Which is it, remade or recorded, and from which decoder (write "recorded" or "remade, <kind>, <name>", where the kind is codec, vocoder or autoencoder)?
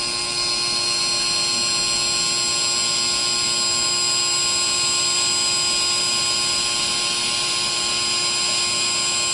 recorded